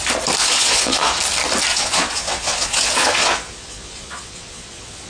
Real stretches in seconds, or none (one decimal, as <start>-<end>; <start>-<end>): 0.0-0.4; 1.2-1.7